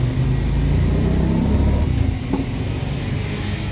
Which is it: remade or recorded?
recorded